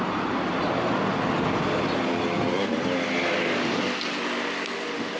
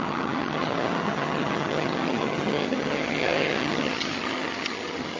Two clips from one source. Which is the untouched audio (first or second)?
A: first